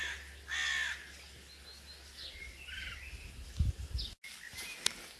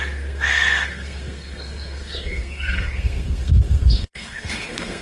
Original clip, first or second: first